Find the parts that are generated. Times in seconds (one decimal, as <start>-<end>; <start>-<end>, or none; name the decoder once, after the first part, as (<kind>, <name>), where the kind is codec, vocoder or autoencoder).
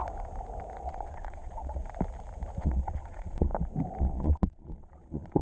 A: 0.8-1.8 (vocoder, Vocos); 2.6-3.5; 4.0-5.4